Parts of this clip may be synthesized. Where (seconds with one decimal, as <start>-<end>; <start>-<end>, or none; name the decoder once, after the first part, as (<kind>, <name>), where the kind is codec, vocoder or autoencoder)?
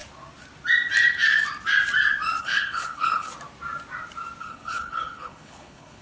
2.4-3.3 (codec, HILCodec); 4.4-6.0